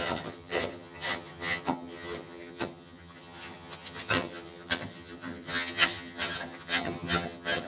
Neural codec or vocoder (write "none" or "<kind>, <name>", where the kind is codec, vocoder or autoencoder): vocoder, HiFi-GAN